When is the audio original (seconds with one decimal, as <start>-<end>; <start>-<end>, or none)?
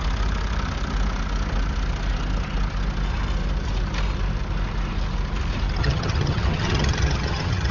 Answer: 0.0-5.8